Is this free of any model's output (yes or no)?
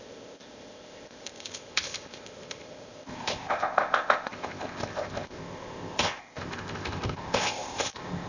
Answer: no